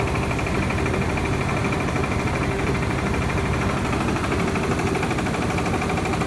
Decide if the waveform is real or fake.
real